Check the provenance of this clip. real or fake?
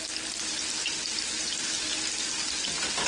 real